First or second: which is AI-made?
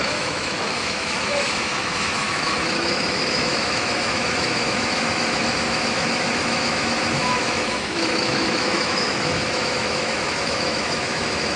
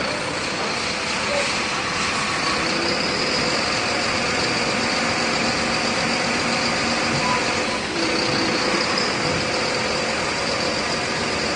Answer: first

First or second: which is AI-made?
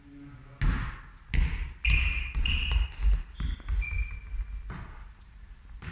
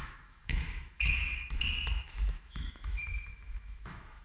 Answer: second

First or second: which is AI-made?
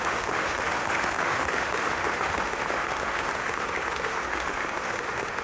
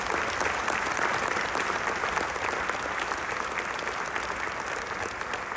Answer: first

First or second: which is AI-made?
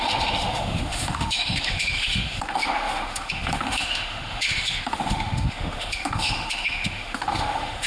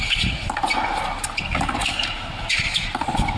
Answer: first